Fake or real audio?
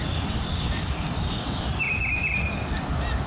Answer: real